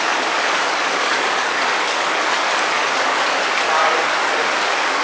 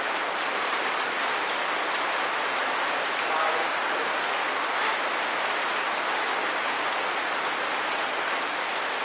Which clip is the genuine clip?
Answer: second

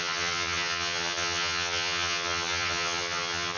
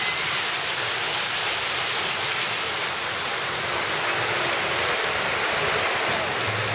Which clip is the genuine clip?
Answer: second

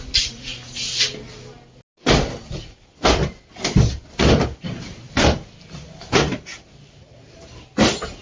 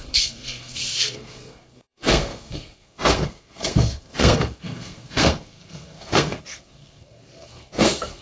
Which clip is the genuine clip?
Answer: first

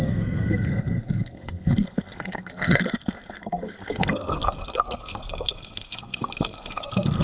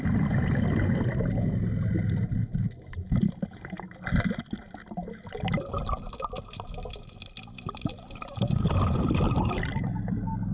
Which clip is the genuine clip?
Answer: second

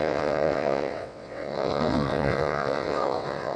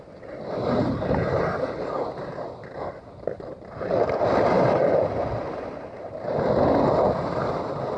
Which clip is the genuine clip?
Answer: second